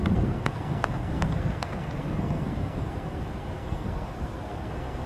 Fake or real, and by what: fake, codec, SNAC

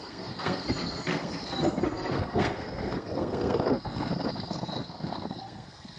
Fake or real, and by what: fake, codec, SNAC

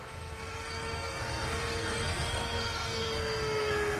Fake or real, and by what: fake, codec, SNAC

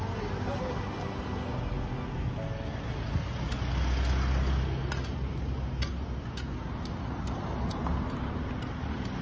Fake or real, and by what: real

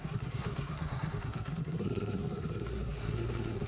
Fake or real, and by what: fake, codec, SNAC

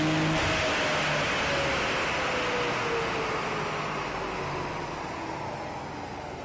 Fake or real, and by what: real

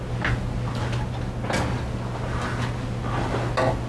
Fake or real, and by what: real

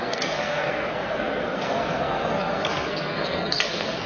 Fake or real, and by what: fake, codec, SNAC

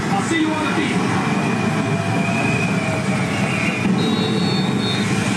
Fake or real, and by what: real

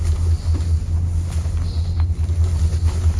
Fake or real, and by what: real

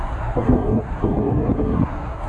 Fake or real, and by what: fake, codec, SNAC